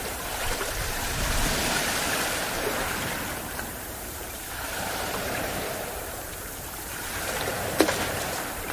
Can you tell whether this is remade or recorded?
remade